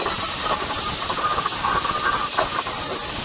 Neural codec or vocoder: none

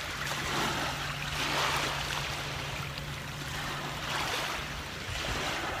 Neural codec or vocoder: none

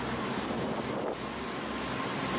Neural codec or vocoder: none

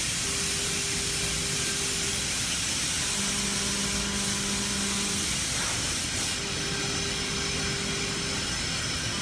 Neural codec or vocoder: none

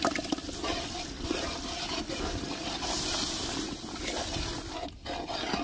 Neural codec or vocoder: none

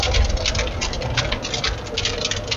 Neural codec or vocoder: none